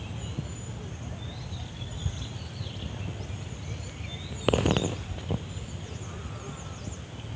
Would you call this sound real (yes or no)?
yes